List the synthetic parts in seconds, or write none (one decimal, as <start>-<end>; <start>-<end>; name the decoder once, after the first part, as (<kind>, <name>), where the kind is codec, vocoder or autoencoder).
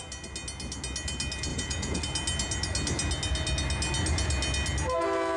1.5-2.0 (vocoder, Vocos)